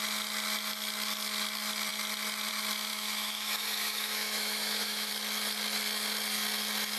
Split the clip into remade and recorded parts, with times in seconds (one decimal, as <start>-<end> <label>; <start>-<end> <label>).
0.0-2.9 recorded; 2.9-5.1 remade; 5.1-7.0 recorded